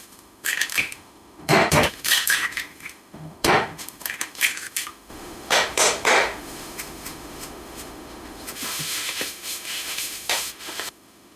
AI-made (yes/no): yes